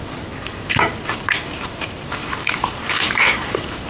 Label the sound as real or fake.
fake